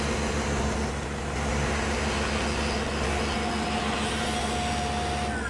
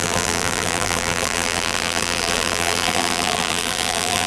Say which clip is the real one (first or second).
first